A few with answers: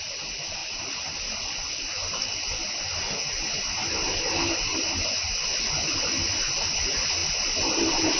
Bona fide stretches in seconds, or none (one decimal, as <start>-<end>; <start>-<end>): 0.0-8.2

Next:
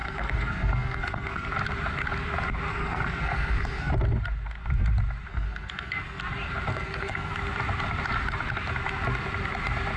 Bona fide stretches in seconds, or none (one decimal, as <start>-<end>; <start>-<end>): 1.5-2.7; 3.9-5.3; 6.2-6.7; 7.3-10.0

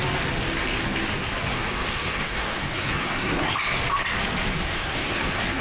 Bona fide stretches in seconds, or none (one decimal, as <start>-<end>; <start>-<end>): 0.0-1.5; 3.5-4.5